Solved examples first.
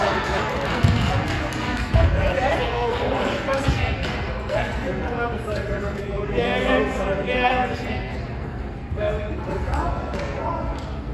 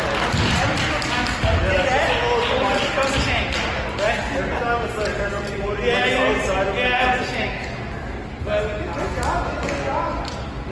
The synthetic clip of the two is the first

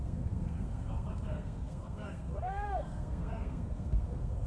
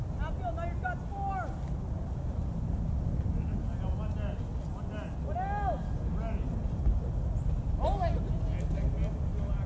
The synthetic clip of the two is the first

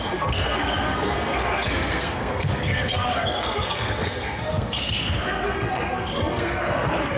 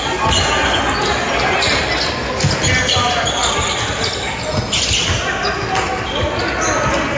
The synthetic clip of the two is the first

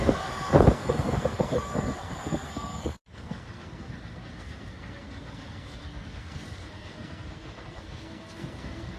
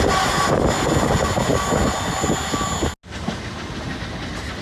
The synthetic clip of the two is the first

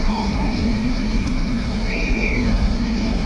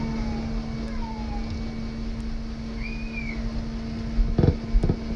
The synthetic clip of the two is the first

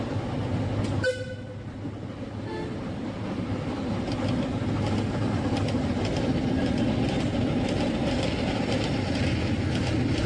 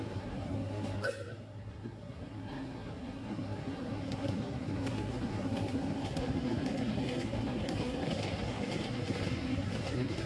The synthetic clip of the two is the second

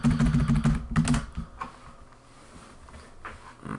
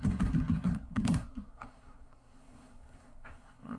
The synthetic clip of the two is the second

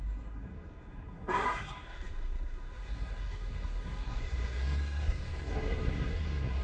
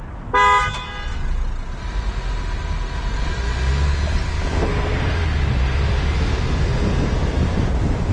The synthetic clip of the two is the first